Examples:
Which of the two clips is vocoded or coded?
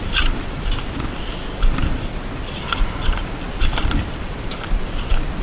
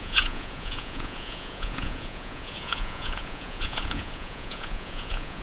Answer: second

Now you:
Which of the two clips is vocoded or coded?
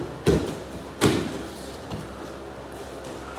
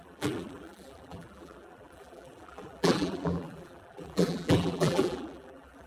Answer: second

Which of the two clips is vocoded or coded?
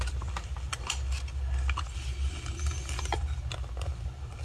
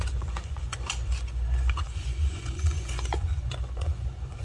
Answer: second